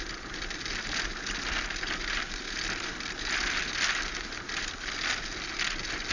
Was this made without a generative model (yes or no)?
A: yes